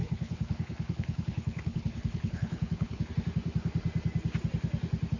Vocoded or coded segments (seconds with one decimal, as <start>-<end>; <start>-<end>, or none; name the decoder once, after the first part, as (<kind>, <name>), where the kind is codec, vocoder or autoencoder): 0.0-3.1 (codec, HILCodec)